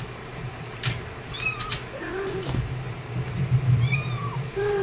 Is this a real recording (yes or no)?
no